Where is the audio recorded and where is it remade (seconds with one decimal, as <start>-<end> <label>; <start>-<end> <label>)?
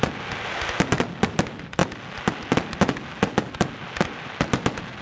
0.0-5.0 recorded